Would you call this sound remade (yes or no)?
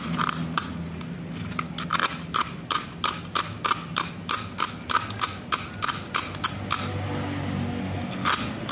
no